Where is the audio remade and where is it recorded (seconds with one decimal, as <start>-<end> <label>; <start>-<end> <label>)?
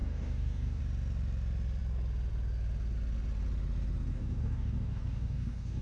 0.0-0.8 remade; 0.8-4.1 recorded; 4.1-5.8 remade